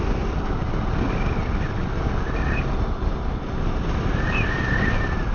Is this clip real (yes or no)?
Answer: yes